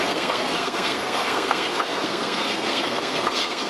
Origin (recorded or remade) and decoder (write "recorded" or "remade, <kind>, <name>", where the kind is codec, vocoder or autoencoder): remade, codec, SNAC